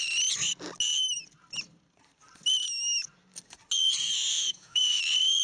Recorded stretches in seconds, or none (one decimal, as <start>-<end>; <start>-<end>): 0.0-4.3; 5.0-5.4